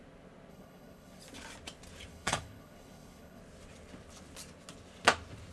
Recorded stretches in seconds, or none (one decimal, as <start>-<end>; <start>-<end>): 0.0-0.5; 1.2-2.1; 3.4-5.5